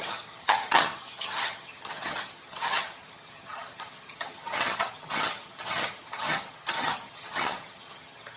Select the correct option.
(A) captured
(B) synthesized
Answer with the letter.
B